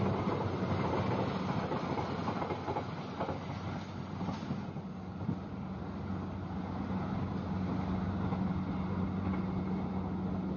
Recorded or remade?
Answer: recorded